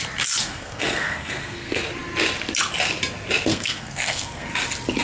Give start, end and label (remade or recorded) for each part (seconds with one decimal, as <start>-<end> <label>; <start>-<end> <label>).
0.0-0.4 recorded; 0.4-1.8 remade; 1.8-3.5 recorded; 3.5-4.5 remade; 4.5-5.0 recorded